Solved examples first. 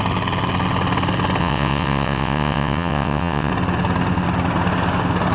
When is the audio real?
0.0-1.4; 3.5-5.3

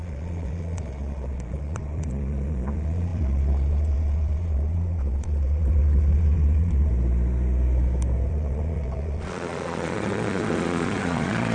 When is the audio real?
6.9-8.3

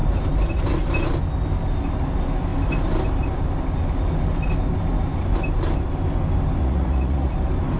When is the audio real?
0.0-6.6; 7.3-7.8

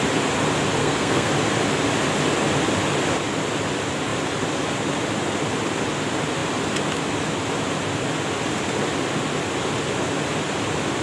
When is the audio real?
0.0-0.8; 1.3-11.0

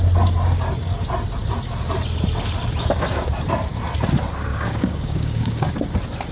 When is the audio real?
0.0-4.5; 5.7-6.3

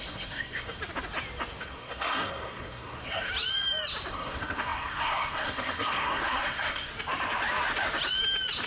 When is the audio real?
0.8-1.6; 3.3-4.1; 6.9-8.7

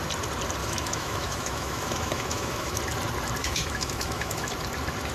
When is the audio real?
0.0-0.6; 2.8-3.4; 4.5-5.1